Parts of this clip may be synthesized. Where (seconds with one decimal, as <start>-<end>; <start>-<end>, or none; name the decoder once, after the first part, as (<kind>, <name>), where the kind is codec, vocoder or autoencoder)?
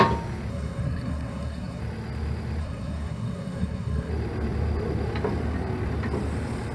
0.5-1.8 (codec, SNAC); 2.6-4.1